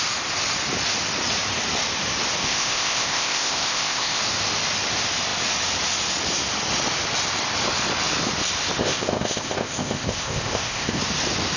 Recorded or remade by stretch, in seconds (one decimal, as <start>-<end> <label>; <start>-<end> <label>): 0.0-2.4 recorded; 2.4-4.2 remade; 4.2-8.8 recorded; 8.8-11.0 remade; 11.0-11.6 recorded